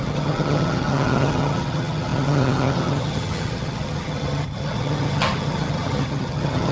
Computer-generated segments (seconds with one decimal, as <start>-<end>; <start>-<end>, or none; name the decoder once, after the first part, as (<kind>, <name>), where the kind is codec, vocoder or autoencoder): 0.0-6.7 (vocoder, HiFi-GAN)